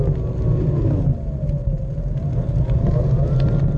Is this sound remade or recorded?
recorded